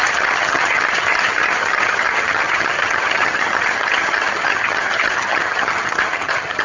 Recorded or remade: remade